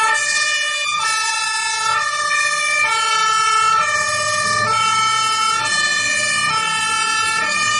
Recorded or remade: recorded